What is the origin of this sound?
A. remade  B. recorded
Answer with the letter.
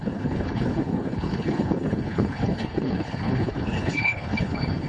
A